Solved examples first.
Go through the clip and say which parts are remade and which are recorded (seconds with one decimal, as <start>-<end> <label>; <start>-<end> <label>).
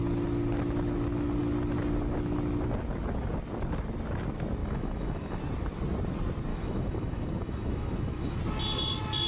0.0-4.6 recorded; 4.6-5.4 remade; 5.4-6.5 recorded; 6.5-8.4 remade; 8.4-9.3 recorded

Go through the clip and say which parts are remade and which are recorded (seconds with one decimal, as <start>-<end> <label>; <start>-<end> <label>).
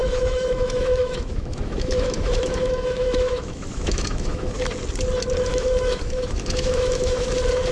0.0-4.6 remade; 4.6-5.5 recorded; 5.5-7.3 remade; 7.3-7.7 recorded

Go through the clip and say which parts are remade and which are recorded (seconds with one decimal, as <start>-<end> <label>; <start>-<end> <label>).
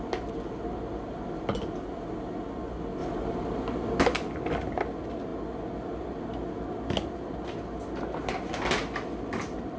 0.0-9.8 recorded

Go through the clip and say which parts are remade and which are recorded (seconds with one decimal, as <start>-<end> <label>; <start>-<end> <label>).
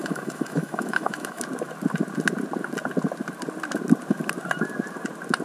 0.0-1.4 remade; 1.4-5.4 recorded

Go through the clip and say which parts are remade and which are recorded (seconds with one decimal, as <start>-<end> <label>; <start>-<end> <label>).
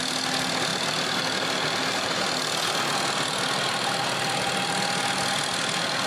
0.0-6.1 recorded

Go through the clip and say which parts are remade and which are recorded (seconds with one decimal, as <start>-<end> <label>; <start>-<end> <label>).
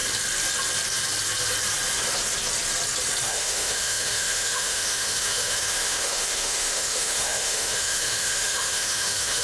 0.0-3.3 recorded; 3.3-9.4 remade